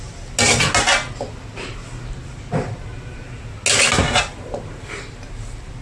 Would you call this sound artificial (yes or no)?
no